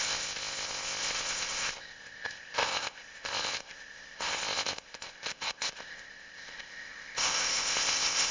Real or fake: fake